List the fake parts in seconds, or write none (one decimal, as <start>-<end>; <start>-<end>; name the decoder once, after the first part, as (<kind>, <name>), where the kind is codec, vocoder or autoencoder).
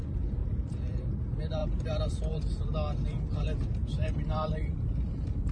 0.4-1.2 (vocoder, BigVGAN v2); 1.6-2.4; 3.8-5.5